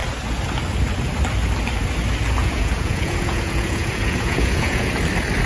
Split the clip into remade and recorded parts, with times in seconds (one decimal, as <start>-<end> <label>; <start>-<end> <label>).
0.0-2.4 recorded; 2.4-4.9 remade; 4.9-5.5 recorded